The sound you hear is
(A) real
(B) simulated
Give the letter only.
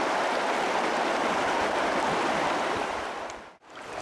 A